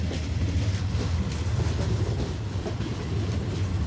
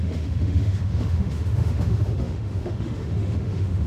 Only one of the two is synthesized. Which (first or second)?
second